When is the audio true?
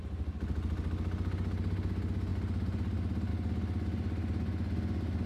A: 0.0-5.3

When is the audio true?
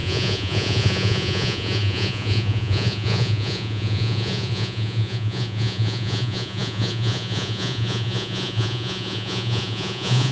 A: none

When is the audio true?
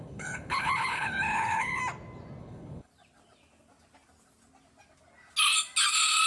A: 1.8-2.4; 2.9-6.3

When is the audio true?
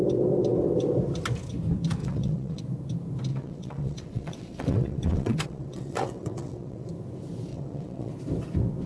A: 0.0-2.0; 2.6-3.3; 6.9-7.5; 8.1-8.9